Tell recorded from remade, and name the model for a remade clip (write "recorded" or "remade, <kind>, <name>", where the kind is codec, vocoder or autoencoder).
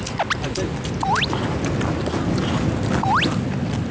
recorded